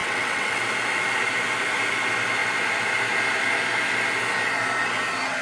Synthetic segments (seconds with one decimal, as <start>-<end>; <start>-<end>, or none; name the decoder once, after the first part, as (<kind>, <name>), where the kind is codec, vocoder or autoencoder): 0.0-0.6 (vocoder, WaveNeXt)